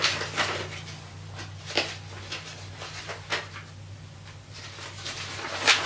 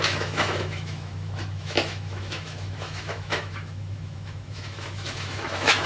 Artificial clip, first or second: second